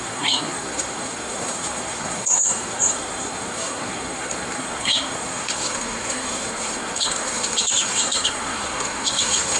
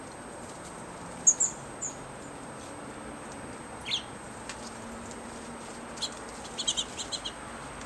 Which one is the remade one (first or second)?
first